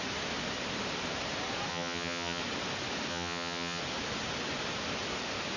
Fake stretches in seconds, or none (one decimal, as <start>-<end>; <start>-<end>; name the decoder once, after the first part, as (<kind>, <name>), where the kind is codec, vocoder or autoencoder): 1.7-2.4 (vocoder, HiFi-GAN); 3.1-3.8